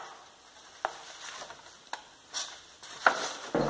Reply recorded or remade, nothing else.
recorded